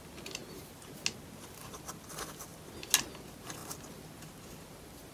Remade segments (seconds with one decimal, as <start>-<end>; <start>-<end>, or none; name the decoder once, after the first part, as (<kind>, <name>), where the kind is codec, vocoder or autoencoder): none